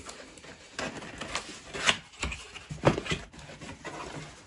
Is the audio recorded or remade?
recorded